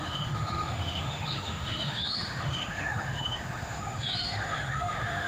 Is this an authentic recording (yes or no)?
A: no